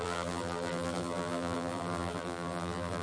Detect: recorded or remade remade